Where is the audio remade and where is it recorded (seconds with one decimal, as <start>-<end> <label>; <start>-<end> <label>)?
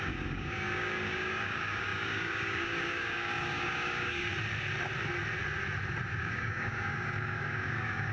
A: 0.0-4.3 remade; 4.3-6.2 recorded; 6.2-8.1 remade